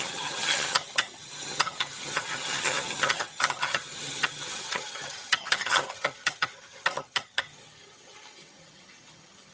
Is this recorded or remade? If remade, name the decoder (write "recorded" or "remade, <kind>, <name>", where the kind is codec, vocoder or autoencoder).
remade, vocoder, HiFi-GAN